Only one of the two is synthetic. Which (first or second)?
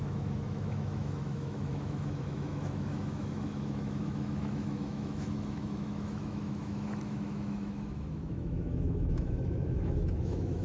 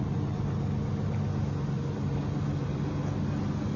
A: first